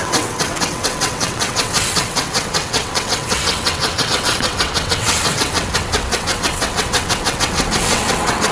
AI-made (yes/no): yes